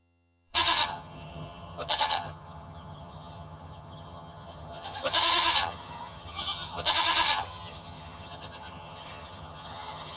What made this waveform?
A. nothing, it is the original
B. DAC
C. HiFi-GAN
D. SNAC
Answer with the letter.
C